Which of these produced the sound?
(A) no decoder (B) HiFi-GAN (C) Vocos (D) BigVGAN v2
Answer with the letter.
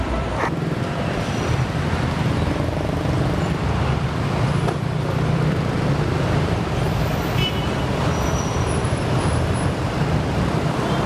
D